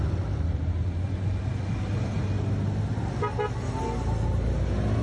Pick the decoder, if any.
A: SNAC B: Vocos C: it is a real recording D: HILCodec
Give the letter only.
C